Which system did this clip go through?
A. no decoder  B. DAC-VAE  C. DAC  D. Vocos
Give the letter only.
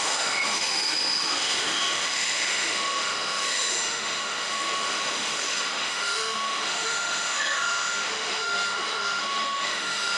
B